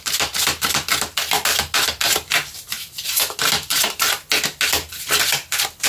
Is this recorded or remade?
recorded